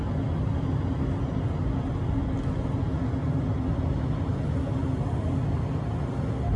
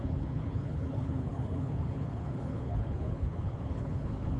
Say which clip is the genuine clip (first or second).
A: first